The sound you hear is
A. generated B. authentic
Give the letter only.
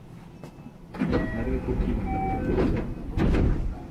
B